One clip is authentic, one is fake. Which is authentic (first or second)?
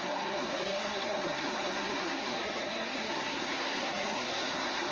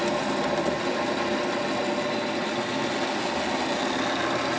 second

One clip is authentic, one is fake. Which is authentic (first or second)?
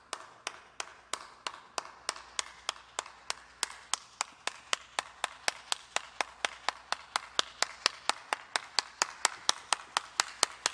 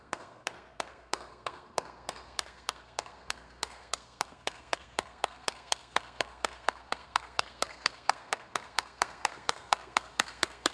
first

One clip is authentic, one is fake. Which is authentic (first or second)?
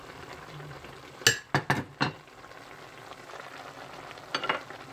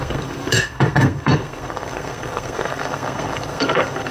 first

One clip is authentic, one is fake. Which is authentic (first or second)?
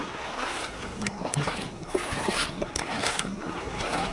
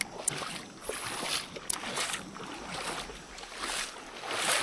second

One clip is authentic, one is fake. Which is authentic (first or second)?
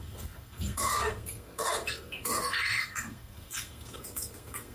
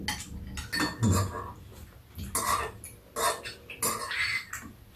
second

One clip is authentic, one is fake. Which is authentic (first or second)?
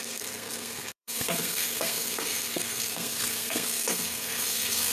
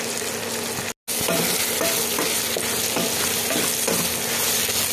second